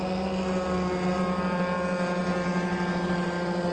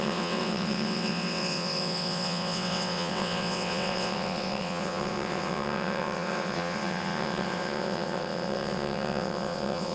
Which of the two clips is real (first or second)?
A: first